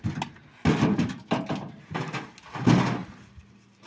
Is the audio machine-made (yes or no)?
no